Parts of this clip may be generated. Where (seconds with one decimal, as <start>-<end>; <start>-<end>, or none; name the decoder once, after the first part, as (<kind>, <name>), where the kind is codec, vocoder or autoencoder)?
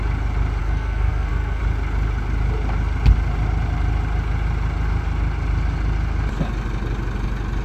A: 0.6-1.6 (codec, SNAC)